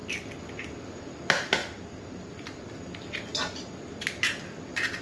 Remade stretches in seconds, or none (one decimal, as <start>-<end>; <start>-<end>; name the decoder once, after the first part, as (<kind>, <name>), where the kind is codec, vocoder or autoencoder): 1.6-2.8 (vocoder, BigVGAN v2); 3.3-4.0